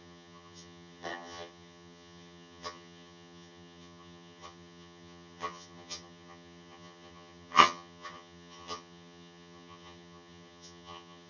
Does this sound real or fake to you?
fake